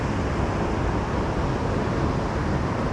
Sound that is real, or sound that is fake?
real